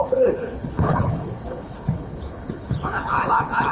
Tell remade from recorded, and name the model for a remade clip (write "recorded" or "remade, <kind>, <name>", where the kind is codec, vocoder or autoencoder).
remade, codec, HILCodec